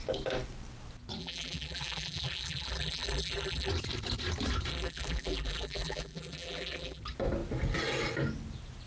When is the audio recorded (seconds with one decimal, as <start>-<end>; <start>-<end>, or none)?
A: 0.0-1.2; 3.7-4.7; 7.0-8.9